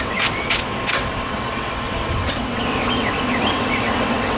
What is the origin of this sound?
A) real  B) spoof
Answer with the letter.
B